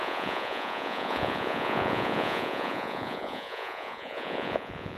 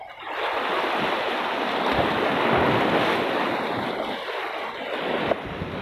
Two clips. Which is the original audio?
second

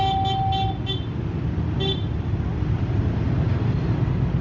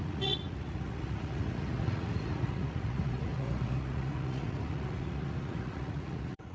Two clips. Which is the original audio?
first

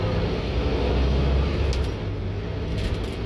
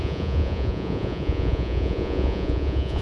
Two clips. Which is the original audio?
first